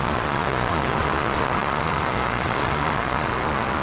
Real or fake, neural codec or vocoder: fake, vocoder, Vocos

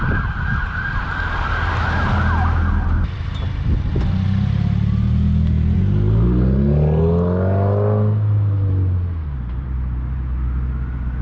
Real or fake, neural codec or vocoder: real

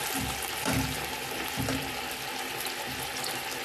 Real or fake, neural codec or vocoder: real